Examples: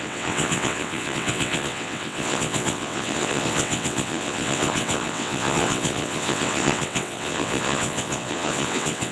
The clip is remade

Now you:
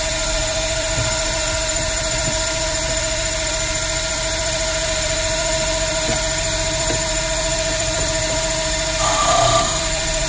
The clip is remade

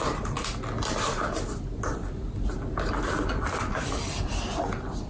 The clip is recorded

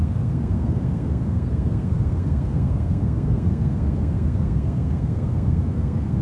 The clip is remade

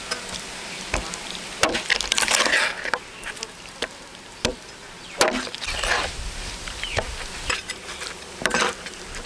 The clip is recorded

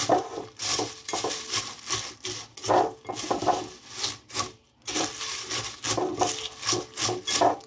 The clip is recorded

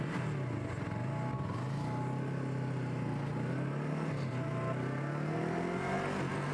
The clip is recorded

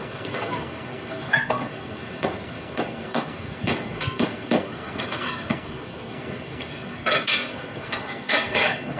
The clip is remade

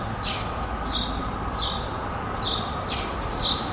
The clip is recorded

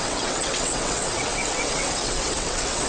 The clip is remade